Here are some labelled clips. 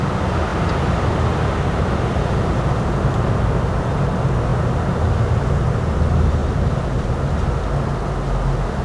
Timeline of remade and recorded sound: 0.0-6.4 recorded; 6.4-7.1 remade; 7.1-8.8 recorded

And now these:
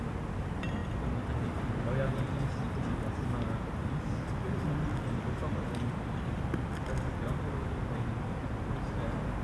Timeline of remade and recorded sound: 0.0-9.4 recorded